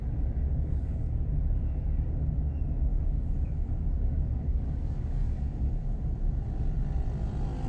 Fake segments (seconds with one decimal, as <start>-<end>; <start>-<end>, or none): 0.0-2.3; 2.9-6.1